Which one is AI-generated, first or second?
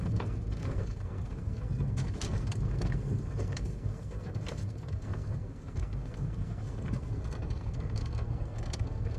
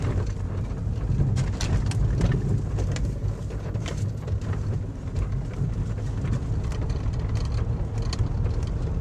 first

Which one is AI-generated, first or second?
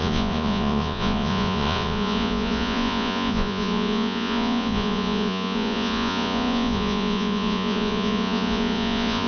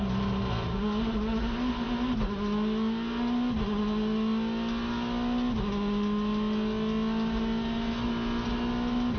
first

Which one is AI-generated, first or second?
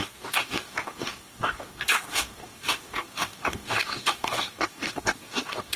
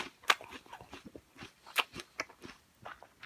first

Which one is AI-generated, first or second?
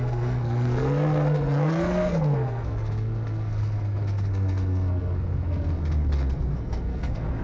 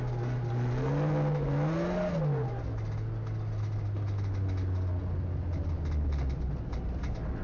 first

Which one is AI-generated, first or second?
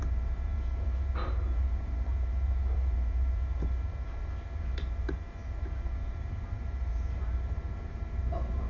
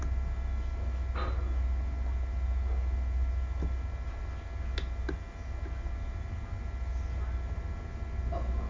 first